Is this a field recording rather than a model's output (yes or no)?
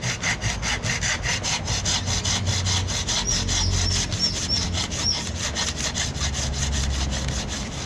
yes